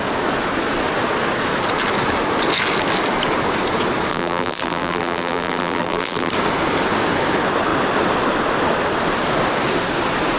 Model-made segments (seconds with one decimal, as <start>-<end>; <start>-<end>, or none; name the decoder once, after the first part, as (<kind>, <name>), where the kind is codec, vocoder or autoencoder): 4.1-6.3 (vocoder, BigVGAN v2)